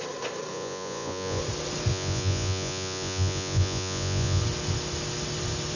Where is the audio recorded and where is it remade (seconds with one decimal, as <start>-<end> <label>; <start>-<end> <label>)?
0.0-0.5 recorded; 0.5-1.4 remade; 1.4-1.9 recorded; 1.9-4.4 remade; 4.4-5.8 recorded

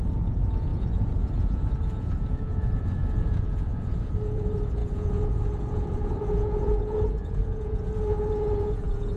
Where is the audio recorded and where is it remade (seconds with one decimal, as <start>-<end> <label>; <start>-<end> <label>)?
0.0-9.2 remade

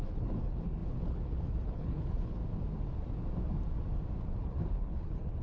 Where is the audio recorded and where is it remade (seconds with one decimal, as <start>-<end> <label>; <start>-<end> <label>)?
0.0-2.4 remade; 2.4-4.2 recorded; 4.2-5.4 remade

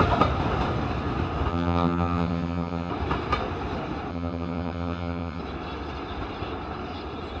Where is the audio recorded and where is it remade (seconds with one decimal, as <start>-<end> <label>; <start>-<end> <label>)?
0.0-1.5 recorded; 1.5-2.9 remade; 2.9-4.1 recorded; 4.1-5.4 remade; 5.4-7.4 recorded

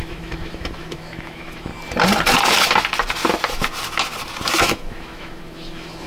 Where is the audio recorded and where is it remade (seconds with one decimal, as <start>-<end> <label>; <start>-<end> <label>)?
0.0-1.7 remade; 1.7-4.6 recorded; 4.6-6.1 remade

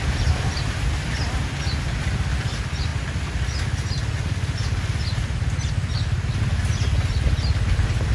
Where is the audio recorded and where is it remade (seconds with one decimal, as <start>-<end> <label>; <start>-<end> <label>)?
0.0-8.1 recorded

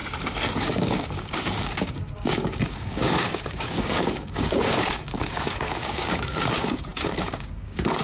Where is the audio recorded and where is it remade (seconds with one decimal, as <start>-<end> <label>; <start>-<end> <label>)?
0.0-0.6 recorded; 0.6-8.0 remade